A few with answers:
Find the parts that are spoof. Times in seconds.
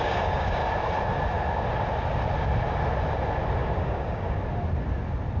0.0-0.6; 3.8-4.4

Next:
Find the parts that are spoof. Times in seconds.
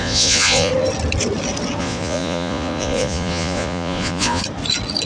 0.0-0.7; 1.8-4.4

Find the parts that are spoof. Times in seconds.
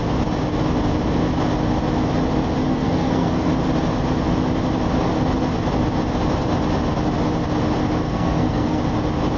2.7-3.5; 8.0-8.8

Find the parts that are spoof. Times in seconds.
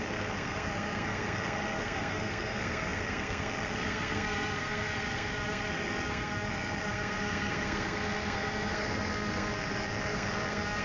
0.0-10.8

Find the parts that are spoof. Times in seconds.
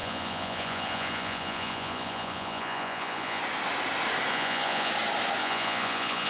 0.0-3.4; 4.3-4.9; 5.4-6.3